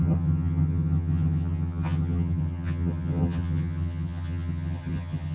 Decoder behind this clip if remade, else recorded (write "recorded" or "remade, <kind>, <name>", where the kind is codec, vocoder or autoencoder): remade, vocoder, HiFi-GAN